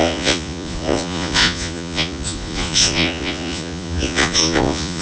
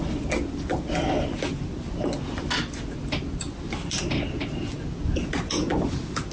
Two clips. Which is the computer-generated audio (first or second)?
first